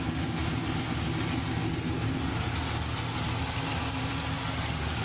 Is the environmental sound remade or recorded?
recorded